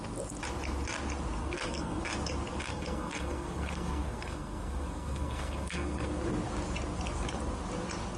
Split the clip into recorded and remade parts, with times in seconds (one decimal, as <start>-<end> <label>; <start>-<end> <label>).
0.0-1.4 recorded; 1.4-2.0 remade; 2.0-2.7 recorded; 2.7-6.2 remade; 6.2-8.2 recorded